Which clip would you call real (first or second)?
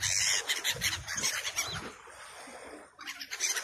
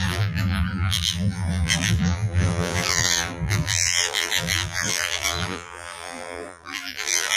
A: first